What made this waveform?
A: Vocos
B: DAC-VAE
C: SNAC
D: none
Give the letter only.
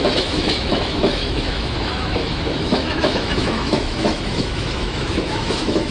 B